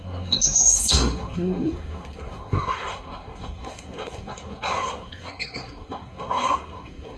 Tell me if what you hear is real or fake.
fake